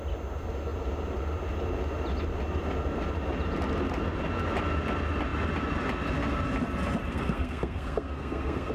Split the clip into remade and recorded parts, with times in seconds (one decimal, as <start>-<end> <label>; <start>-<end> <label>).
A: 0.0-7.1 recorded; 7.1-8.7 remade

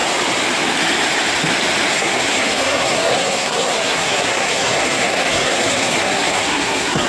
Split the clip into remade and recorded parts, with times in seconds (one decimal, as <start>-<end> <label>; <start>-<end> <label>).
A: 0.0-1.9 recorded; 1.9-7.1 remade